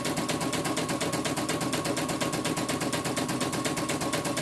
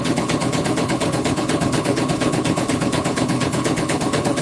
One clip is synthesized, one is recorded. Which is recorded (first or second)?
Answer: first